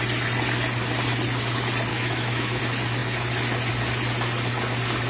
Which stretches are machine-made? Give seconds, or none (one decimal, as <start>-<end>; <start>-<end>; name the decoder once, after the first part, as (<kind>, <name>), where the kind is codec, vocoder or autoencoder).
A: 1.9-2.6 (autoencoder, DAC-VAE)